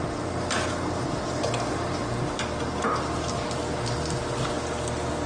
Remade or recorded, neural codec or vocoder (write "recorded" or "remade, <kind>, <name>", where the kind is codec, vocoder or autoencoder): recorded